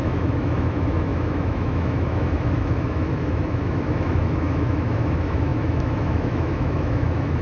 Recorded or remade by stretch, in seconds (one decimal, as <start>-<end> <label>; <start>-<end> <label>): 0.0-7.4 remade